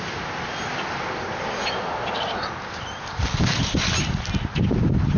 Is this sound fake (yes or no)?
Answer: no